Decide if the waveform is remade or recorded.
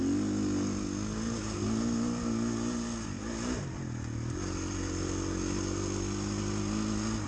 recorded